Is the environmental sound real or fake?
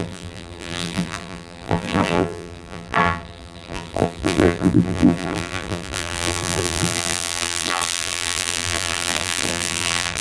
fake